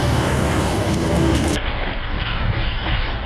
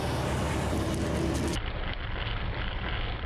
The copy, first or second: first